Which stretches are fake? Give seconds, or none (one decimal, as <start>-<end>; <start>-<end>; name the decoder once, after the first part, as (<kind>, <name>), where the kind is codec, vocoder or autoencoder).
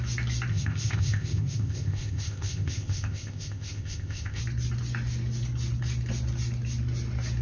0.5-4.4 (codec, ZipCodec)